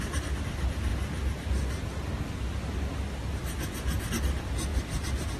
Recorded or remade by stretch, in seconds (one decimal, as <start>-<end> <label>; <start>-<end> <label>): 0.0-5.4 recorded